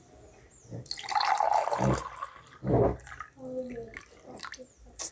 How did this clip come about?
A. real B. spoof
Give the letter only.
A